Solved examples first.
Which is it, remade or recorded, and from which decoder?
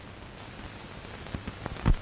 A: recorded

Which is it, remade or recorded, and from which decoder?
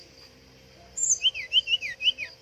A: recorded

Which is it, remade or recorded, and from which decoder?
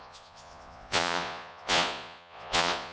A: remade, vocoder, Vocos